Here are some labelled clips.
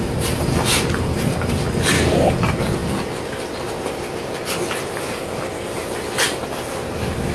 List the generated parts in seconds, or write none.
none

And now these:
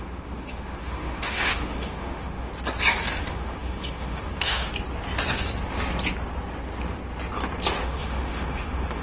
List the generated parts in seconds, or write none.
0.0-2.5 (autoencoder, DAC-VAE); 3.2-4.7; 7.8-9.0

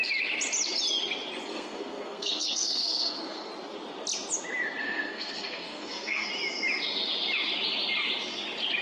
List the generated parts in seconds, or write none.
1.5-3.5 (codec, SNAC); 4.8-6.3

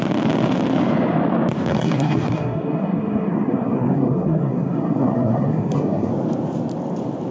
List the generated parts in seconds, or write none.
1.7-6.1 (codec, SNAC)